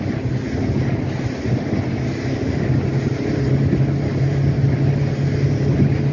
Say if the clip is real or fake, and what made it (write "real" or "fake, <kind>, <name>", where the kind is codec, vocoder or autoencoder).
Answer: real